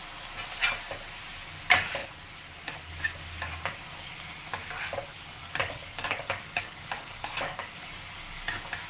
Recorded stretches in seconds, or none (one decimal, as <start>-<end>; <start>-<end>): 0.0-5.2; 8.0-8.9

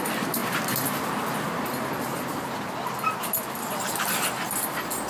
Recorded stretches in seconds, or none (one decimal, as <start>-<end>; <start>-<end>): 0.0-5.1

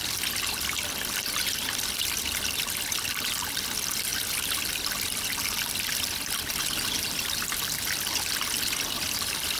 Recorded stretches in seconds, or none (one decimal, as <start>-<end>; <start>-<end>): 0.0-9.6

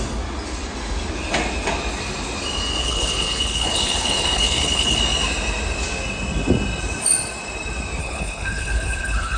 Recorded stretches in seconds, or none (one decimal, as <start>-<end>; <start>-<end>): 0.0-2.8; 5.0-8.0